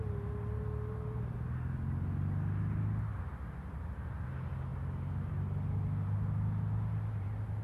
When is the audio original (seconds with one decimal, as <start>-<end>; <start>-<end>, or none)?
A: 0.0-7.6